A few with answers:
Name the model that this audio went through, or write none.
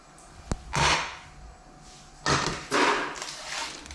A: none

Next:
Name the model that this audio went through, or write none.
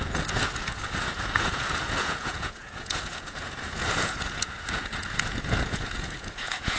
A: vocoder, Vocos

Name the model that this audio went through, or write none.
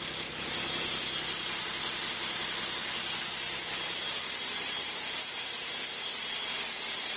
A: none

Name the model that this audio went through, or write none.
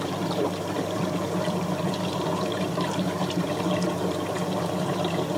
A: vocoder, BigVGAN v2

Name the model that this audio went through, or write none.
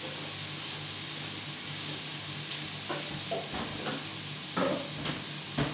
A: none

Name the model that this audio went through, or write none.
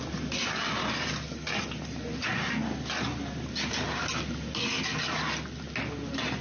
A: none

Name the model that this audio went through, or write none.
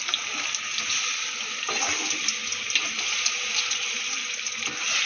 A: none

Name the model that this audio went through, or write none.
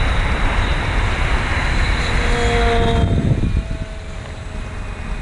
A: none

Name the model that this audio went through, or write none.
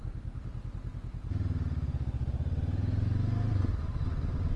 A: none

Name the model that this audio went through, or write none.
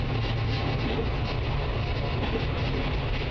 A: none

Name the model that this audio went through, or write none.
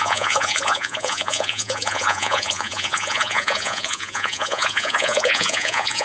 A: vocoder, Vocos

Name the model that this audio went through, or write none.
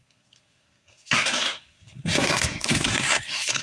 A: codec, SNAC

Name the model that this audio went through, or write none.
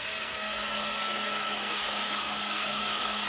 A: codec, SNAC